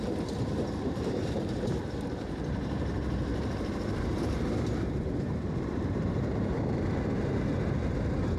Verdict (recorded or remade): remade